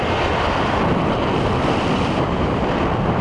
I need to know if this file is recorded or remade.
recorded